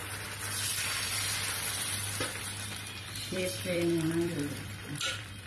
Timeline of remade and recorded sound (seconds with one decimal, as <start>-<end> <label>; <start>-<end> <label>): 0.0-0.7 recorded; 0.7-5.5 remade